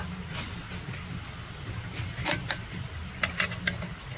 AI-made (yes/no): no